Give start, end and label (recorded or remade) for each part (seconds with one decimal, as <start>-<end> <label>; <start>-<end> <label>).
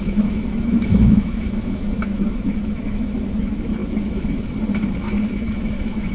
0.0-3.8 remade; 3.8-5.0 recorded; 5.0-6.1 remade